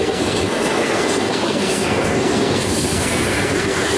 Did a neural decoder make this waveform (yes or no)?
yes